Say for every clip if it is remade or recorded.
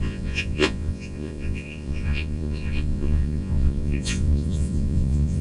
remade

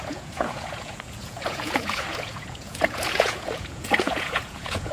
remade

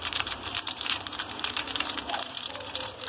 remade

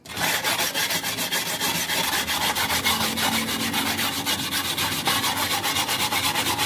recorded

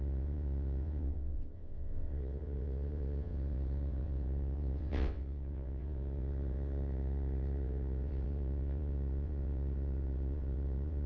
remade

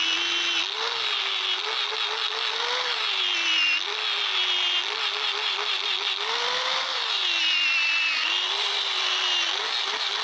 recorded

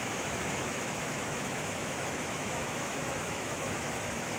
remade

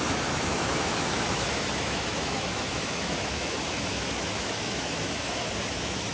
remade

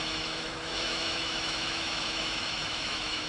remade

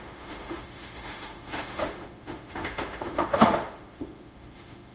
remade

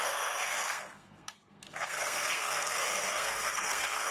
remade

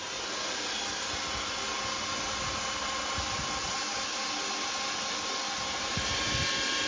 recorded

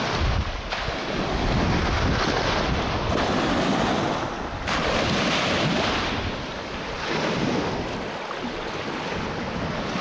recorded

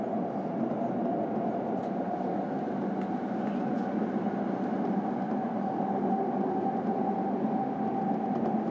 recorded